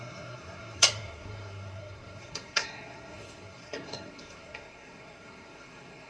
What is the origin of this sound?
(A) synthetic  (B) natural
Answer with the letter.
A